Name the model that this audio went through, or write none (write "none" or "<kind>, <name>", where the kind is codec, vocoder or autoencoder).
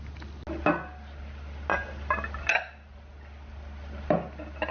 none